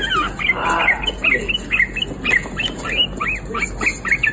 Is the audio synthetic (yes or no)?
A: no